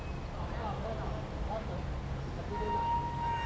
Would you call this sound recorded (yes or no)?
yes